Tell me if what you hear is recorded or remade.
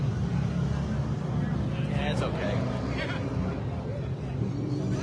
recorded